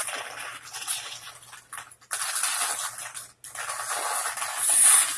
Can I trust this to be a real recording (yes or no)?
yes